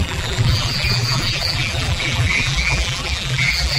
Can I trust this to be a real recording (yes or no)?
no